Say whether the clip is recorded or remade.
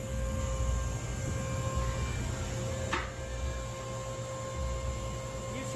recorded